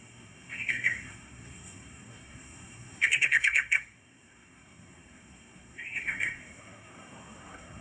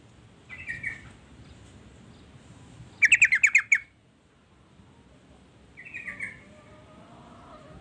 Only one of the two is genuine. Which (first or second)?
second